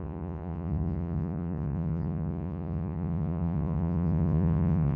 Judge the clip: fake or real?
fake